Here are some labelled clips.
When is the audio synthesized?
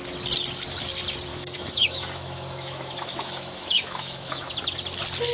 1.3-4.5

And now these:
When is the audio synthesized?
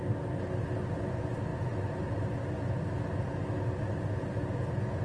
none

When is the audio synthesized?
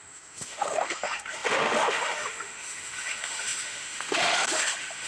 0.0-5.1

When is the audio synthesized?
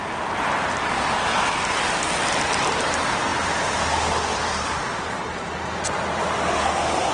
3.3-5.0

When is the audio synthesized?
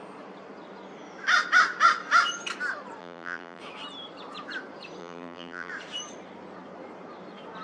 3.0-3.6; 5.0-5.7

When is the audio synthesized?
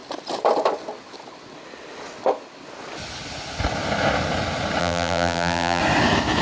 4.8-5.8